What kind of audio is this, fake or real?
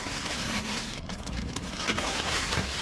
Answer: fake